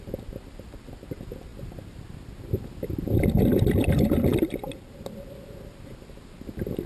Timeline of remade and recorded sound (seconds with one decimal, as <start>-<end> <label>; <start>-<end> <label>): 0.0-1.5 recorded; 1.5-2.6 remade; 2.6-4.3 recorded; 4.3-5.3 remade; 5.3-6.9 recorded